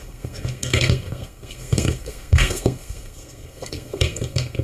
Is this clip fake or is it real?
fake